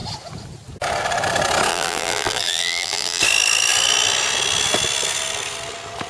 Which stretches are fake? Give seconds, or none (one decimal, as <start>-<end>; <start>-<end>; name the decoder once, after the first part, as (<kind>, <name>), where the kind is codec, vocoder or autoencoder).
1.7-3.2 (vocoder, BigVGAN v2)